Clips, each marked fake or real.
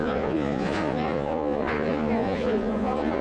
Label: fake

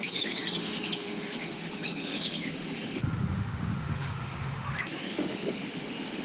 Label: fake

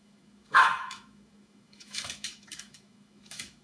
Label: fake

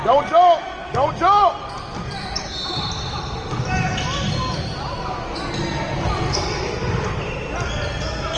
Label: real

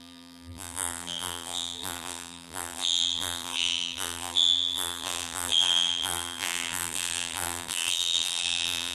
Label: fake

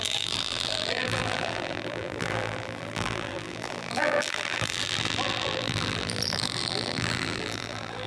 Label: fake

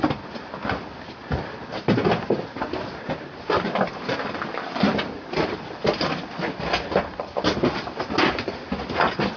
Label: real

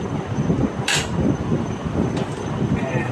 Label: fake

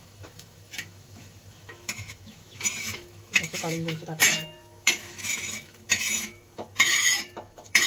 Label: fake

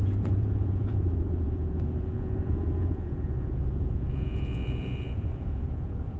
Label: fake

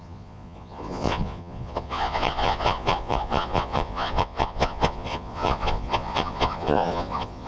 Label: fake